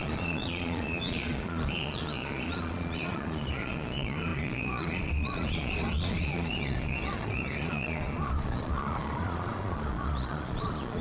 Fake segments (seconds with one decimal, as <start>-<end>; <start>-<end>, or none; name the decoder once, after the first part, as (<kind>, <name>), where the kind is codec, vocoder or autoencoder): 0.0-11.0 (vocoder, Vocos)